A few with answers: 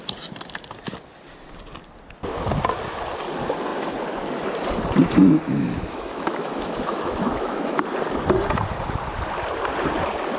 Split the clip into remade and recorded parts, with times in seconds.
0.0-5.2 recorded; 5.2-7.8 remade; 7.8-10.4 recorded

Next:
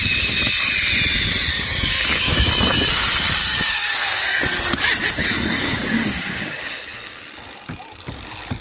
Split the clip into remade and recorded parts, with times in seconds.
0.0-1.5 recorded; 1.5-2.5 remade; 2.5-3.4 recorded; 3.4-4.4 remade; 4.4-5.2 recorded; 5.2-7.2 remade; 7.2-8.6 recorded

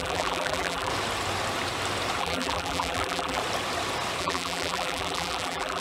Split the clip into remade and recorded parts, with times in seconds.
0.0-0.9 remade; 0.9-2.2 recorded; 2.2-3.4 remade; 3.4-4.2 recorded; 4.2-5.8 remade

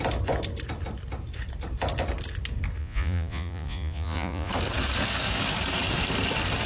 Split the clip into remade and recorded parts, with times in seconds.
0.0-2.8 recorded; 2.8-4.5 remade; 4.5-6.7 recorded

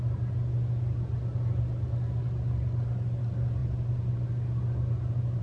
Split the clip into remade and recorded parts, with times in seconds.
0.0-5.4 recorded